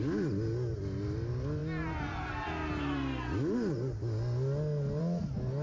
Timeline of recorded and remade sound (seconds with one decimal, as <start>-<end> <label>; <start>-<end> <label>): 0.0-5.6 recorded